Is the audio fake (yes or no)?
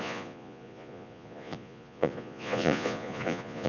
yes